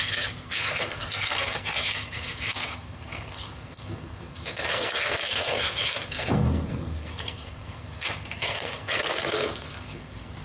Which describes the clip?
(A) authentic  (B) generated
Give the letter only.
B